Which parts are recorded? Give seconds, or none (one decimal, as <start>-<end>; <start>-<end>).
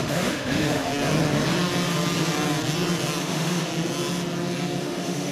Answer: 0.9-3.2; 3.7-4.8